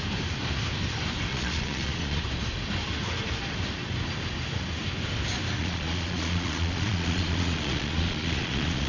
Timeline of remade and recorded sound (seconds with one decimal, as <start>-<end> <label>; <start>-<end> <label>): 0.0-1.3 recorded; 1.3-2.2 remade; 2.2-5.6 recorded; 5.6-8.9 remade